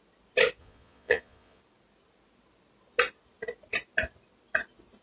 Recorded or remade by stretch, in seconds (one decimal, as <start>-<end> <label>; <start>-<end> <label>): 0.0-0.6 recorded; 0.6-1.6 remade; 1.6-5.0 recorded